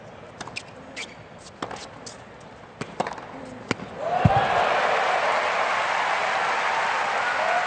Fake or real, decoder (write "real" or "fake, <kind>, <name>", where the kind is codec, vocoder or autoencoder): real